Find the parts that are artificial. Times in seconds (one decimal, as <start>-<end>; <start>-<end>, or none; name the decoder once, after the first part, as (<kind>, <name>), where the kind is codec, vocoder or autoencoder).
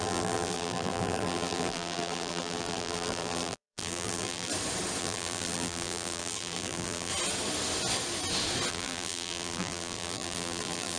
0.0-4.5 (vocoder, BigVGAN v2); 5.0-7.1; 8.7-11.0